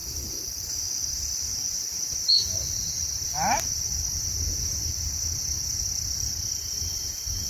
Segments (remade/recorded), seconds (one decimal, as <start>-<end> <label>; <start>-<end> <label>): 0.0-7.5 remade